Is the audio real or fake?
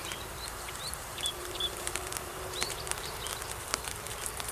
fake